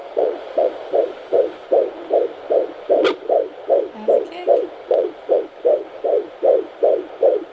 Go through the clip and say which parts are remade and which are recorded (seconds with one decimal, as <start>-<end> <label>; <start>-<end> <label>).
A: 0.0-0.7 remade; 0.7-4.8 recorded; 4.8-5.4 remade; 5.4-7.5 recorded